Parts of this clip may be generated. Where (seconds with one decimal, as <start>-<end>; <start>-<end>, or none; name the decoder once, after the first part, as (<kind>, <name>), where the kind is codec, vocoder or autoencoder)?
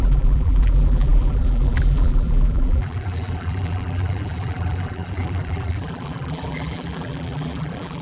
0.0-8.0 (vocoder, BigVGAN v2)